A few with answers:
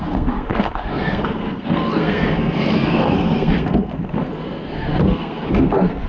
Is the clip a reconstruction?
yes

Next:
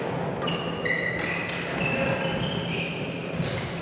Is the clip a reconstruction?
no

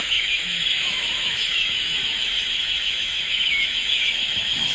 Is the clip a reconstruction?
yes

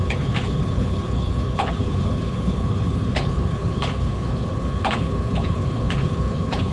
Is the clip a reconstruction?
yes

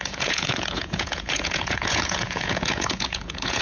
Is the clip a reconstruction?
yes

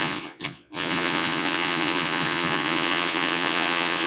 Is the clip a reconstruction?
yes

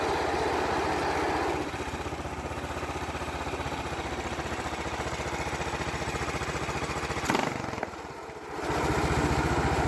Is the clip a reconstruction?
no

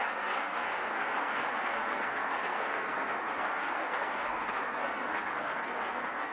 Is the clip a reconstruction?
yes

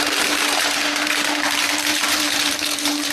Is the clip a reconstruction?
yes